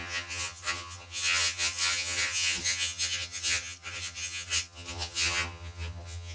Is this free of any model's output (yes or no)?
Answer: no